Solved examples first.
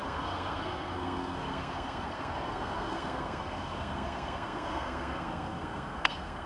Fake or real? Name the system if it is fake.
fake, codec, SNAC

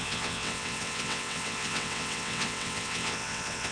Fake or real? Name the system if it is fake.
fake, vocoder, WaveNeXt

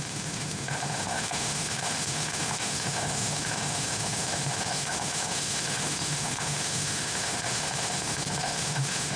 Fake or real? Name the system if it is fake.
fake, autoencoder, DAC-VAE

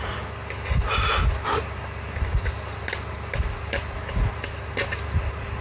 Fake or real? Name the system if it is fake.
real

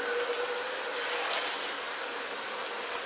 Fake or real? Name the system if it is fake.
real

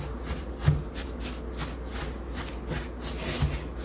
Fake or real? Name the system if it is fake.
real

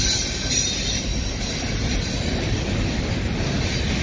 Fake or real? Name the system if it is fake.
real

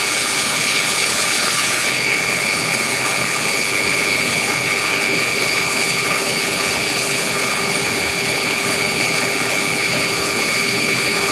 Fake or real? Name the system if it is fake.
fake, codec, HILCodec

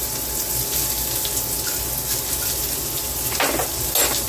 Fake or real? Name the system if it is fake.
real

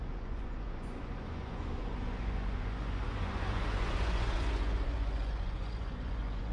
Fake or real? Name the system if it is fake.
fake, vocoder, Vocos